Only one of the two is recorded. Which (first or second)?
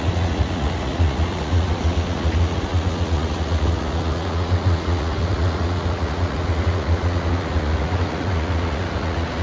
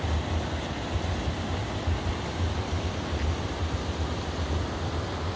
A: second